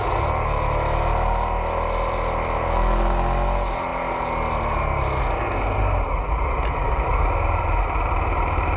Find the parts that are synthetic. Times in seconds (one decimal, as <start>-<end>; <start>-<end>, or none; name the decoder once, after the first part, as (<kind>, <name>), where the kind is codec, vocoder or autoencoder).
none

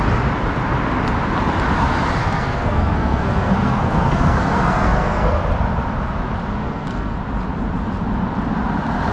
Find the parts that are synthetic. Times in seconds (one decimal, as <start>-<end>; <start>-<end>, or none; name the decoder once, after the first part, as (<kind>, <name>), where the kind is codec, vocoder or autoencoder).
2.2-5.4 (codec, SNAC); 6.6-7.2

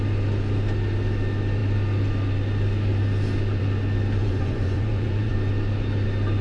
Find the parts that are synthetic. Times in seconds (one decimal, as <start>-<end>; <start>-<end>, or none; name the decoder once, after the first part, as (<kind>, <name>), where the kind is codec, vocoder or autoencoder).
4.2-5.3 (vocoder, Vocos)

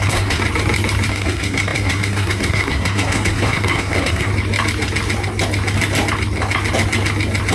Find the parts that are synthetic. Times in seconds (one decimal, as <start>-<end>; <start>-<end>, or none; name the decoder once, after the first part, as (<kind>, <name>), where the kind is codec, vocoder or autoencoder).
0.0-0.4 (codec, SNAC); 1.1-4.3

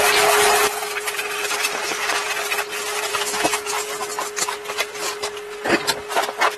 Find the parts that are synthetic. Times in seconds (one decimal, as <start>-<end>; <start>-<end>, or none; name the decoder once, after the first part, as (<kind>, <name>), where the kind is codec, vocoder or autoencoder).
3.1-3.7 (autoencoder, DAC-VAE)

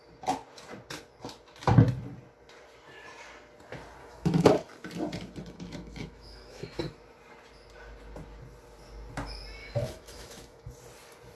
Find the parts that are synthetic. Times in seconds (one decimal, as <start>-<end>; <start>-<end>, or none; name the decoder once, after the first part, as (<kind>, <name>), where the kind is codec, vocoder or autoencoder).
4.0-4.5 (autoencoder, DAC-VAE); 5.4-6.8; 9.6-10.7